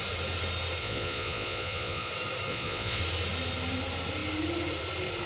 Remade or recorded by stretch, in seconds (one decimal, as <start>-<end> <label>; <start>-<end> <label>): 0.0-0.8 recorded; 0.8-2.1 remade; 2.1-2.5 recorded; 2.5-3.0 remade; 3.0-5.3 recorded